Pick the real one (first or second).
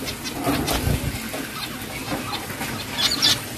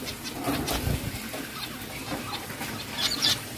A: first